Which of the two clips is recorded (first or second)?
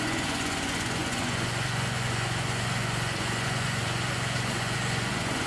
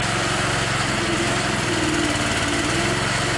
second